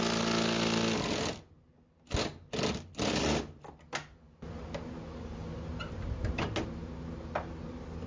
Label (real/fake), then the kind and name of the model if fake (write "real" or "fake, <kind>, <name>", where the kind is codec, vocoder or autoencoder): real